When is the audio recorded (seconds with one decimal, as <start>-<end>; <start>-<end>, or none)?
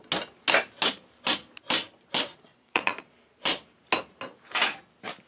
0.0-2.5; 3.0-5.3